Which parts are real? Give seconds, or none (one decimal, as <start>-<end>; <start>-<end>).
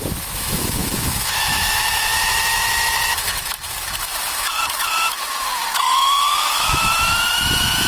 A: none